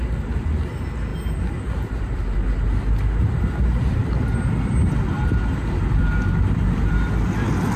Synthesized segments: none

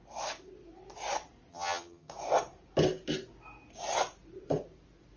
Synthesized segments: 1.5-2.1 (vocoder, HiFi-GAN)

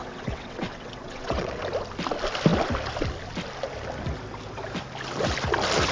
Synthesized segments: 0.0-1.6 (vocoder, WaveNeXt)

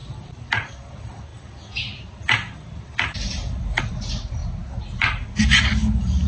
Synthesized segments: 0.0-0.9 (vocoder, BigVGAN v2)

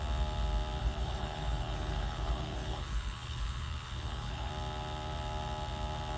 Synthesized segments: 0.8-4.5 (codec, HILCodec)

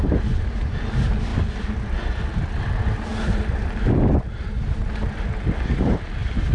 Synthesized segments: 1.3-2.6 (vocoder, BigVGAN v2); 3.1-4.9

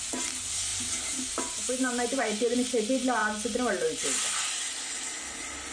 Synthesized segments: 0.7-2.2 (vocoder, BigVGAN v2)

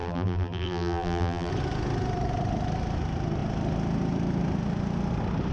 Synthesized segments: 0.0-1.5 (vocoder, BigVGAN v2)